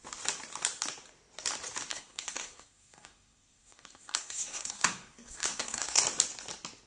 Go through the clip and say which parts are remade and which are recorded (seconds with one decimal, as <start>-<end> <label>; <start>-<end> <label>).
0.0-1.9 recorded; 1.9-6.0 remade; 6.0-6.9 recorded

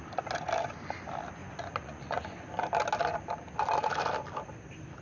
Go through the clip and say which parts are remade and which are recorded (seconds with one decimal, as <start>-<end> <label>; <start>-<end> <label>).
0.0-1.4 recorded; 1.4-2.5 remade; 2.5-5.0 recorded

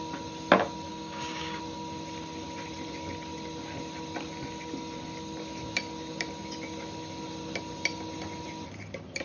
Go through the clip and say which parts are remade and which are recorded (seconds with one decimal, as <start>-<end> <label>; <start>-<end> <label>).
0.0-0.9 recorded; 0.9-1.6 remade; 1.6-9.2 recorded

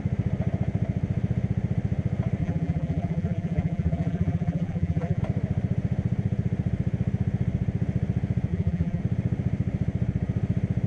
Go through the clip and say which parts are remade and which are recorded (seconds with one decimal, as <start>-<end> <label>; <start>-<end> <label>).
0.0-2.4 recorded; 2.4-5.2 remade; 5.2-8.5 recorded; 8.5-9.0 remade; 9.0-10.9 recorded

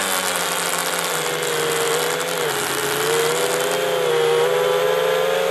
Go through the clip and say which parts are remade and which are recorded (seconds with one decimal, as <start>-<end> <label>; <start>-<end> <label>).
0.0-5.5 recorded